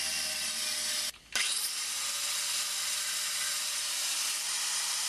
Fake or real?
real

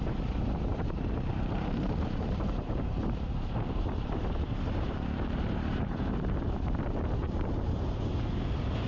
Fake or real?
fake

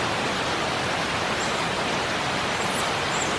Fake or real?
fake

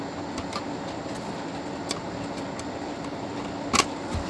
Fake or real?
real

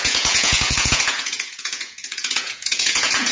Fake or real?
fake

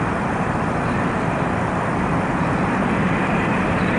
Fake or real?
fake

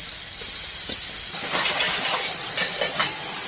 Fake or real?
real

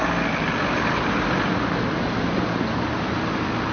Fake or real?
real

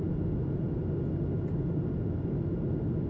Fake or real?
real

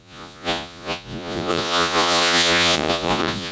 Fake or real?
fake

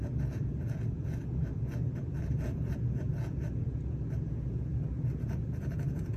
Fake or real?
fake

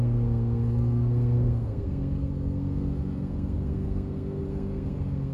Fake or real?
fake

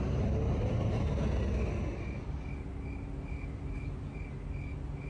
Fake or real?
real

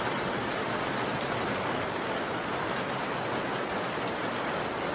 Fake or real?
real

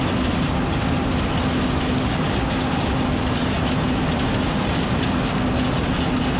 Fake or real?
real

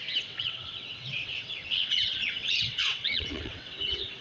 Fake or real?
fake